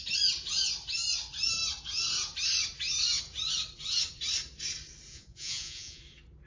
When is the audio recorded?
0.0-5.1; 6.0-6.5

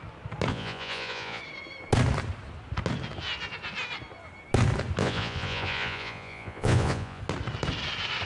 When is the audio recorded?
0.0-0.5; 1.4-5.0; 7.2-8.3

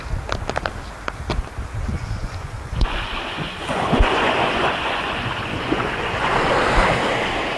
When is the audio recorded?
0.0-1.9; 6.5-7.6

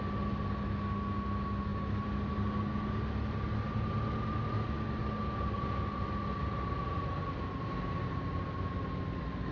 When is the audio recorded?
0.0-1.7; 2.3-9.5

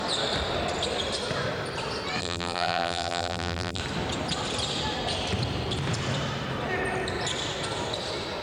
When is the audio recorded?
0.0-2.2; 3.8-8.4

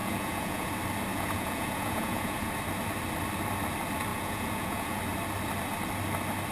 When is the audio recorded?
0.7-1.1; 2.5-4.1; 5.0-6.5